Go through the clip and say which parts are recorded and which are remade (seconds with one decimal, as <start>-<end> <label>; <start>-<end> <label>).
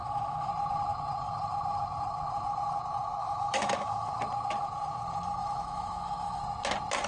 0.0-0.5 remade; 0.5-3.2 recorded; 3.2-4.1 remade; 4.1-5.4 recorded; 5.4-6.4 remade; 6.4-7.1 recorded